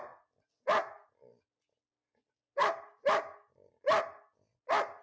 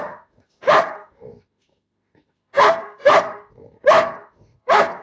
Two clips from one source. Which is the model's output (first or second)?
second